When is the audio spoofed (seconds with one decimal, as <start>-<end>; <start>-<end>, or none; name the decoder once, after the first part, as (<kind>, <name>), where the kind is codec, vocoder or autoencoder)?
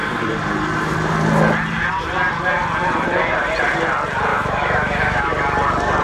4.3-5.3 (autoencoder, DAC-VAE)